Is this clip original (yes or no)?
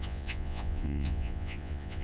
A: no